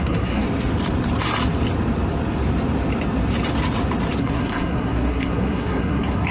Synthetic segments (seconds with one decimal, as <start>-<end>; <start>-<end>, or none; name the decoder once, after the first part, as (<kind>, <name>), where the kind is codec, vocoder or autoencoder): 0.0-0.4 (codec, SNAC); 4.2-6.3